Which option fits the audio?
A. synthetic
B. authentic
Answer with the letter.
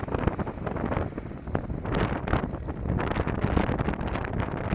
B